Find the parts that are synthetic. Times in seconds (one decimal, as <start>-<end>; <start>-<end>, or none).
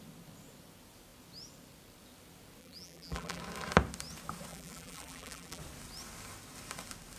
2.6-3.4; 4.5-5.6